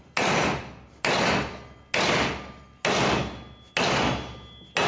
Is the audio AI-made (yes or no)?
no